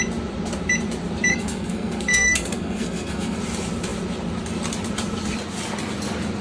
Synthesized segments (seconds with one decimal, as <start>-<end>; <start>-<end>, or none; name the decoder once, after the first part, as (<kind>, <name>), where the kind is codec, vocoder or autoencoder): 1.3-3.4 (codec, SNAC)